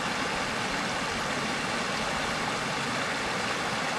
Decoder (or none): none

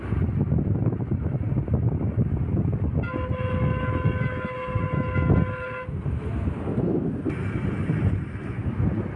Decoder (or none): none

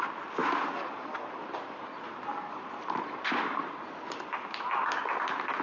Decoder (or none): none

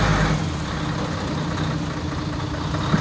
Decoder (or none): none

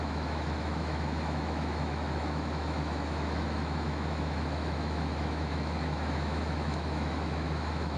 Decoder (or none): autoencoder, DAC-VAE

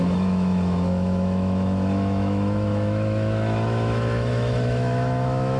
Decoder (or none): autoencoder, DAC-VAE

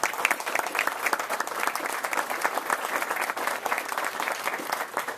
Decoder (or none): none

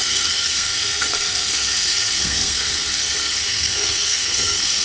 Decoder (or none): codec, SNAC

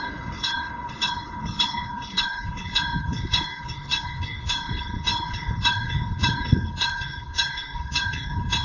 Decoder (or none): codec, HILCodec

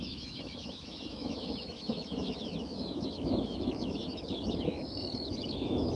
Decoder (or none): autoencoder, DAC-VAE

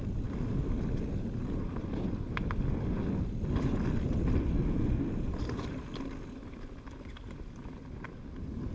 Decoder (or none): none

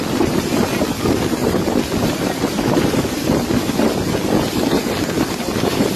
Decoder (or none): none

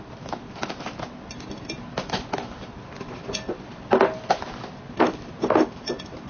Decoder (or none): none